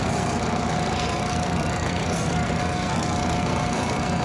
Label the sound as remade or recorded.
remade